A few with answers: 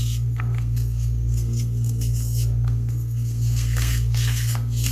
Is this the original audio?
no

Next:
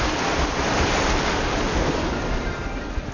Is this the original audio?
yes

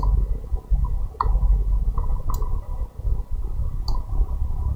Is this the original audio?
yes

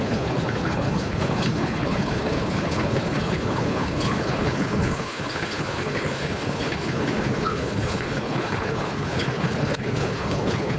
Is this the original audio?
no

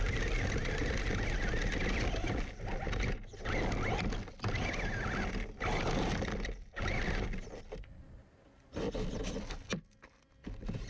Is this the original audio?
yes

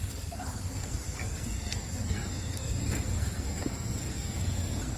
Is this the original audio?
no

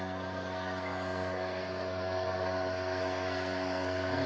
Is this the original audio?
no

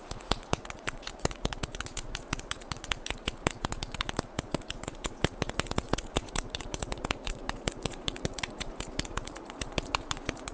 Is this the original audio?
no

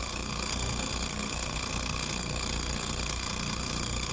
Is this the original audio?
no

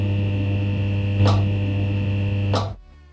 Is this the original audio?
no